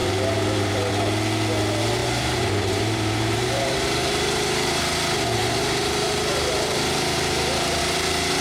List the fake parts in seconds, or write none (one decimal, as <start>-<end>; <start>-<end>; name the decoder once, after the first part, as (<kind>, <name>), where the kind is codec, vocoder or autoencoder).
0.0-0.9 (vocoder, BigVGAN v2); 2.0-4.8; 5.4-7.8